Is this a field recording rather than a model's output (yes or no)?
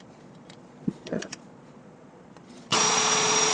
no